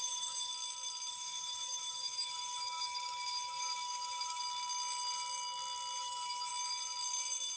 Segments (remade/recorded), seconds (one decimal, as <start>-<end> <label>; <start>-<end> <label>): 0.0-0.5 remade; 0.5-1.1 recorded; 1.1-4.4 remade; 4.4-6.0 recorded; 6.0-6.5 remade; 6.5-7.6 recorded